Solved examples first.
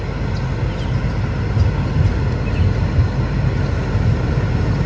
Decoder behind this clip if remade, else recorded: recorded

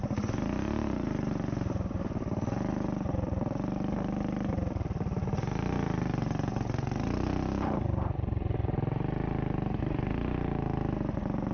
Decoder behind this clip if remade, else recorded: recorded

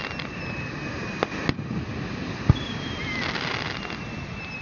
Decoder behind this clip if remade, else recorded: recorded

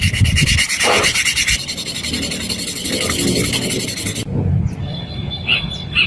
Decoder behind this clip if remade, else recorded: recorded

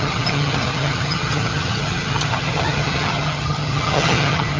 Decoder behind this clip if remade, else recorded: remade, vocoder, HiFi-GAN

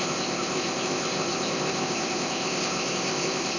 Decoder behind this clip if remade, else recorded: remade, codec, ZipCodec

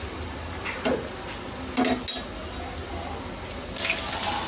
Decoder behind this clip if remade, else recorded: recorded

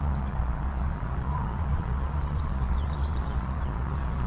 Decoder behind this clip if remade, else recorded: remade, vocoder, Vocos